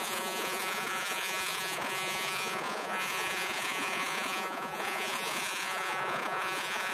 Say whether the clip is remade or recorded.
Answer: remade